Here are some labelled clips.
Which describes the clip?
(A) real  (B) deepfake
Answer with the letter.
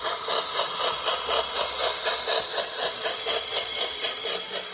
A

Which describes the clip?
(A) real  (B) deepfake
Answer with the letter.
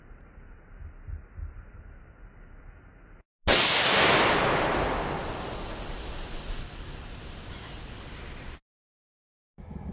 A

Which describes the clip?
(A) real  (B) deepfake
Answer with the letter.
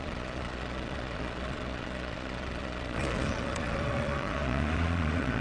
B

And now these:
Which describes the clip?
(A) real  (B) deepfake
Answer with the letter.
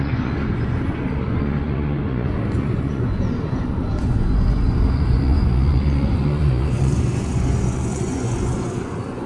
B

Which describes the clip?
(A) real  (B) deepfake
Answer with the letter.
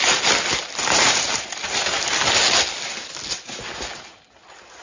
A